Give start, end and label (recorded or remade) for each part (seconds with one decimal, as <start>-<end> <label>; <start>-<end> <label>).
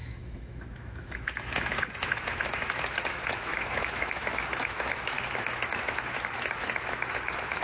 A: 0.0-7.6 remade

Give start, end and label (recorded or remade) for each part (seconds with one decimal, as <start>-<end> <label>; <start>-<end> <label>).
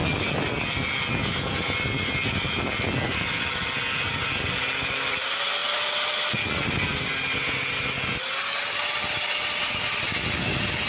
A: 0.0-10.9 recorded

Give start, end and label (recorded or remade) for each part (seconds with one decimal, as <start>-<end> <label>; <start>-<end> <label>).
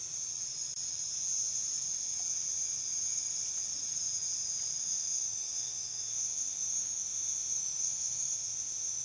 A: 0.0-4.8 recorded; 4.8-9.0 remade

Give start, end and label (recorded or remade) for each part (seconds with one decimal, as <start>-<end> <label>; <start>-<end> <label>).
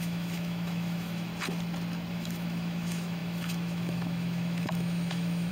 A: 0.0-1.3 remade; 1.3-2.1 recorded; 2.1-5.5 remade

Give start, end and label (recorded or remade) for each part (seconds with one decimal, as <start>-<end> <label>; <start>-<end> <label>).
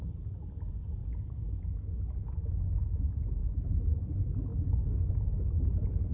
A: 0.0-3.4 recorded; 3.4-3.9 remade; 3.9-4.5 recorded; 4.5-5.1 remade; 5.1-6.1 recorded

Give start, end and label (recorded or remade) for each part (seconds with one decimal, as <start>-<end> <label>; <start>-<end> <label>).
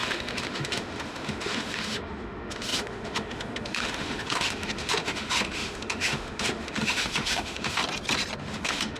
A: 0.0-7.8 remade; 7.8-8.4 recorded; 8.4-9.0 remade